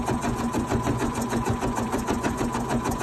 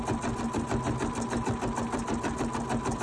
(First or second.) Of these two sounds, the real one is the second